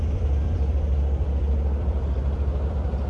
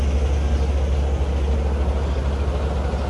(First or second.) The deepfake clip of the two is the first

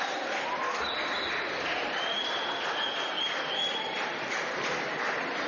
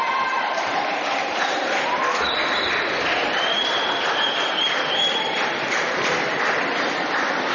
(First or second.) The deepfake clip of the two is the second